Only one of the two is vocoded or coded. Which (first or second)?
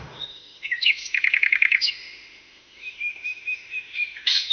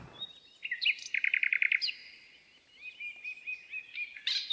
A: first